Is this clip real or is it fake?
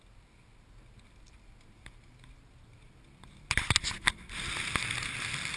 real